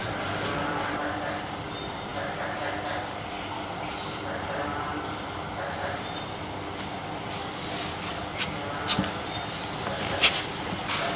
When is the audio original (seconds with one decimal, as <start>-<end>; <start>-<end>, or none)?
0.0-11.2